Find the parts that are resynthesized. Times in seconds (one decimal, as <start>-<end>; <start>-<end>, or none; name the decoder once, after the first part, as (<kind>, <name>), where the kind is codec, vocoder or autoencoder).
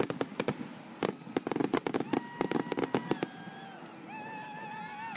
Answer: none